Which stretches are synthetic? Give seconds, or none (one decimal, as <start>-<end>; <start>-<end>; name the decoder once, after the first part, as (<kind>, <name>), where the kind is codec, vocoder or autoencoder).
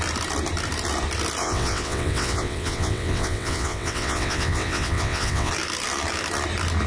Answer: 1.4-5.5 (vocoder, WaveNeXt)